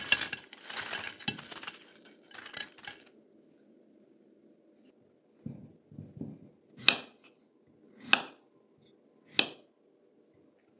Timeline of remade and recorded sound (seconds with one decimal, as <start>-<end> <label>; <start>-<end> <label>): 0.0-10.8 recorded